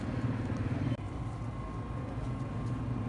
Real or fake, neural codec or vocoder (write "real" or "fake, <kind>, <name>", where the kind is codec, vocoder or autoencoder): real